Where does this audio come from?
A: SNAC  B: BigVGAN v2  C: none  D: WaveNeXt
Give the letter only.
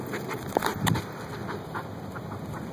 C